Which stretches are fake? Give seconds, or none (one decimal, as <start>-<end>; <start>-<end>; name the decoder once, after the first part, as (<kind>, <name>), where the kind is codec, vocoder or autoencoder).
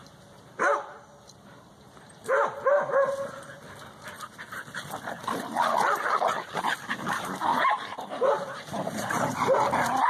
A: 0.0-2.6 (vocoder, BigVGAN v2); 7.5-9.6